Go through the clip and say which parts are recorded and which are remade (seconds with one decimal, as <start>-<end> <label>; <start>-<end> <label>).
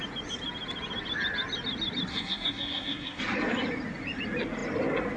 0.0-2.1 recorded; 2.1-3.2 remade; 3.2-5.2 recorded